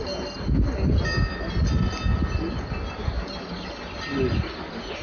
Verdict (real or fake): real